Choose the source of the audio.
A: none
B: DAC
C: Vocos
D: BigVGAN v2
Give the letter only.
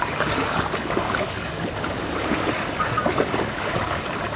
B